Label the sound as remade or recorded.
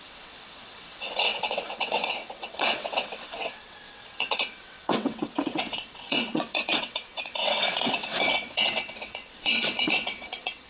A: remade